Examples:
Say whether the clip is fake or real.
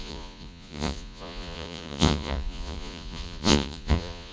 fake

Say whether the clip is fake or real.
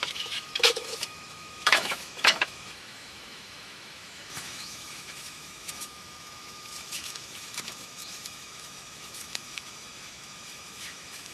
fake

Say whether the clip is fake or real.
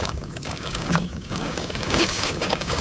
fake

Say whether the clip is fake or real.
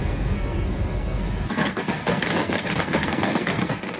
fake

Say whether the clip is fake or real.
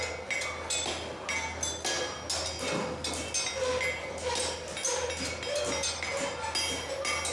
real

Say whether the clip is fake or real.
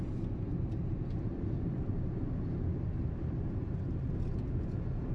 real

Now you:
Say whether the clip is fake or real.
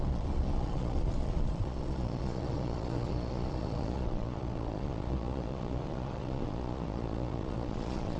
fake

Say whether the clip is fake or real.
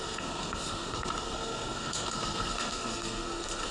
fake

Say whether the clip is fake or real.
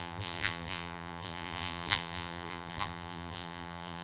fake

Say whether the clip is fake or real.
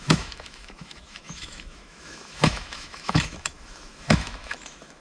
fake